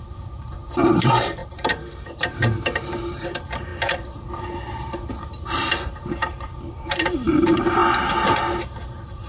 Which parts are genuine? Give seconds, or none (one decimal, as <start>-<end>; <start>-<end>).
3.7-5.1; 7.8-8.9

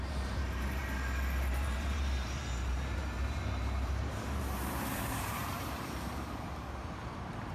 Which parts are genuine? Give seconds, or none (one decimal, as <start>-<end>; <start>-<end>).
0.8-1.5

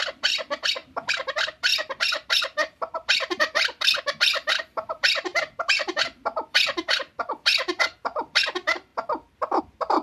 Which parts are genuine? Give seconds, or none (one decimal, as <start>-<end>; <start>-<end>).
none

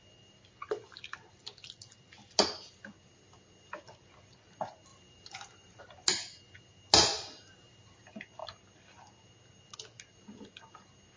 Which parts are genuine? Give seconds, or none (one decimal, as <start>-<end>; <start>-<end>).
0.0-4.9; 5.8-11.2